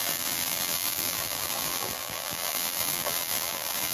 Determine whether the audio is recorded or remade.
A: remade